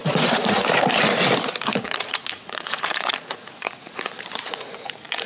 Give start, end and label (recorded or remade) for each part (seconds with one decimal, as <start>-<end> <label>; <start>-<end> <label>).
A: 0.0-0.6 remade; 0.6-1.7 recorded; 1.7-5.3 remade